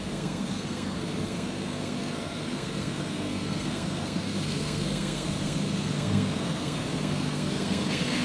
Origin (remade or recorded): remade